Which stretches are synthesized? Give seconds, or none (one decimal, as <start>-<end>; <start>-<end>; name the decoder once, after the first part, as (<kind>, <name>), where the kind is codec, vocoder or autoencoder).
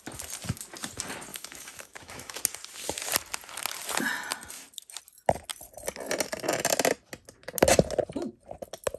1.3-2.4 (autoencoder, DAC-VAE)